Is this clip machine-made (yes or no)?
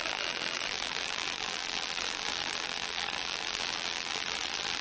yes